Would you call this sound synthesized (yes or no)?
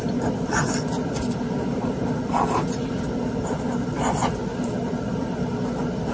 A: no